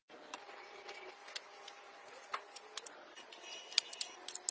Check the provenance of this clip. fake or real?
real